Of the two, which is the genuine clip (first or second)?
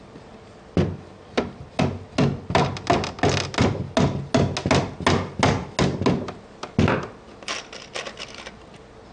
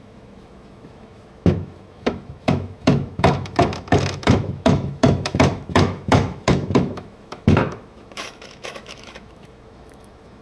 first